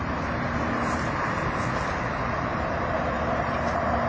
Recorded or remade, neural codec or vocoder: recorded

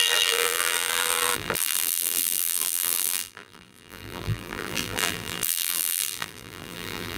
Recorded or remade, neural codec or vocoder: remade, vocoder, BigVGAN v2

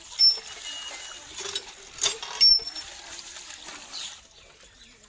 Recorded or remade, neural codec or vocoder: recorded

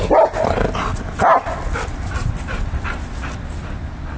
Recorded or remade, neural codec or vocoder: recorded